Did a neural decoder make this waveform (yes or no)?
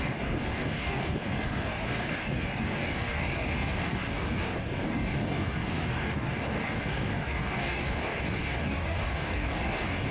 yes